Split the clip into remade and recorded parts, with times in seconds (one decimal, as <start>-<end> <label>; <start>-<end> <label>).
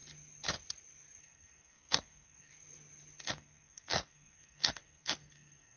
0.0-1.2 recorded; 1.2-2.5 remade; 2.5-3.3 recorded; 3.3-5.8 remade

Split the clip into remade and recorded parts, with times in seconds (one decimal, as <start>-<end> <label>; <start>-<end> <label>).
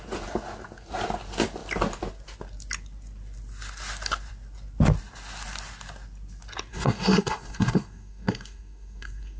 0.0-6.7 recorded; 6.7-9.4 remade